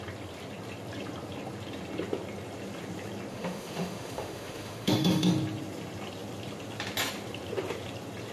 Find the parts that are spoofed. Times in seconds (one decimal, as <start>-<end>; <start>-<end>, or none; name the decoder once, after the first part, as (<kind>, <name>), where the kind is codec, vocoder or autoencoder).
3.3-5.3 (autoencoder, DAC-VAE)